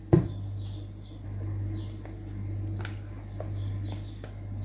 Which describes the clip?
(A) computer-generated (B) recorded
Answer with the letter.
B